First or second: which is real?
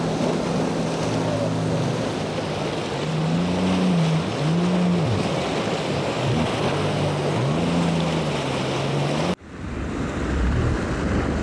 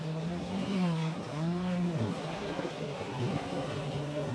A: first